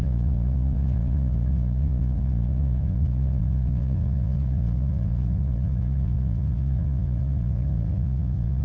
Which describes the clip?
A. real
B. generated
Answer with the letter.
B